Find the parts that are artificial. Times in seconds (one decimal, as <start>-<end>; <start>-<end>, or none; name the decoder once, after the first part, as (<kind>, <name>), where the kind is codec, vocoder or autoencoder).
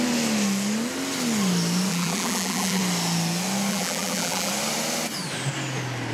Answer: 1.9-2.8 (vocoder, BigVGAN v2); 3.7-4.5